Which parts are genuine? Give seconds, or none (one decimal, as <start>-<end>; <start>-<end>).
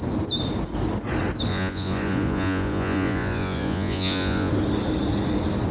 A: 0.0-1.5; 4.5-5.7